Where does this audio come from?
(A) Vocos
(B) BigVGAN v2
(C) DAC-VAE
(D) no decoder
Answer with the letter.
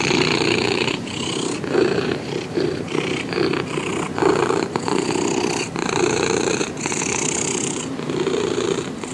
B